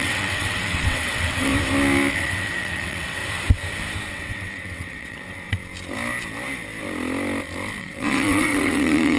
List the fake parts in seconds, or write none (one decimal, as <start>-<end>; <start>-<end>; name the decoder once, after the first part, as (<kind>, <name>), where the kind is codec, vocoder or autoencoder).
0.0-1.5 (vocoder, WaveNeXt); 2.1-3.2; 4.1-5.6; 7.8-9.2

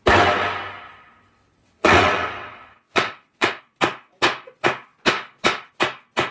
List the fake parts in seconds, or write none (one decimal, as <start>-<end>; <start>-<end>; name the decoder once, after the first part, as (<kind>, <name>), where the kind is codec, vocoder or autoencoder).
1.6-3.6 (vocoder, WaveNeXt)

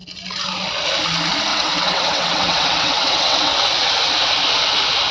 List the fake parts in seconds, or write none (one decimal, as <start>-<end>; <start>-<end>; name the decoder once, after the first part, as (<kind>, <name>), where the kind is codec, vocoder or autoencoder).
1.5-3.6 (vocoder, WaveNeXt)